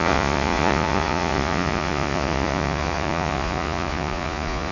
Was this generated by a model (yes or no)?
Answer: yes